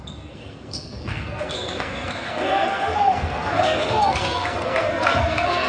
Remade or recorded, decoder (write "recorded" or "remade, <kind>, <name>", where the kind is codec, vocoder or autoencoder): remade, codec, SNAC